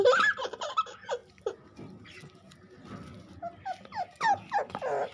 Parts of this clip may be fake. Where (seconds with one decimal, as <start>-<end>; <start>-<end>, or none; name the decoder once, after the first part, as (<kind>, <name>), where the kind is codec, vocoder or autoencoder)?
none